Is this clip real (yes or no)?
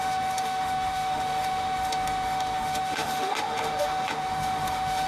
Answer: no